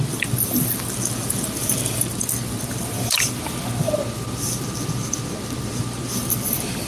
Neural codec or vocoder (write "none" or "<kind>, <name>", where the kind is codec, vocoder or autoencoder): none